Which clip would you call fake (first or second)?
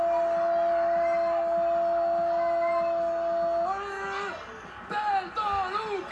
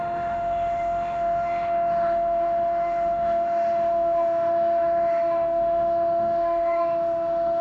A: second